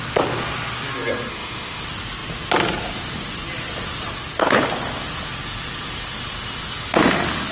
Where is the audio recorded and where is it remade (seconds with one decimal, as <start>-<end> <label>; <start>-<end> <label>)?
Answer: 0.0-1.3 recorded; 1.3-1.8 remade; 1.8-7.5 recorded